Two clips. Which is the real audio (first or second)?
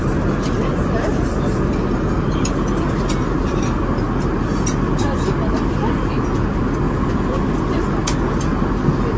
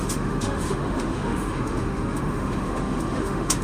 first